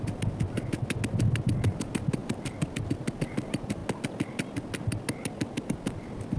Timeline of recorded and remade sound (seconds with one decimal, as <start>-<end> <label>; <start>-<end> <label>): 0.0-2.2 recorded; 2.2-2.8 remade; 2.8-6.4 recorded